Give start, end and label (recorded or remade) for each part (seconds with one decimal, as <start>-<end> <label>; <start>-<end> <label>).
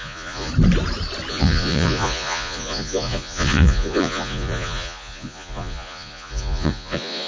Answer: 0.0-0.5 remade; 0.5-1.3 recorded; 1.3-7.3 remade